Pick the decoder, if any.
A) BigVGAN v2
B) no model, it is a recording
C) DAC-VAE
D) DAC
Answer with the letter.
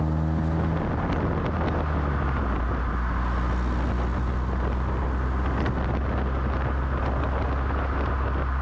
B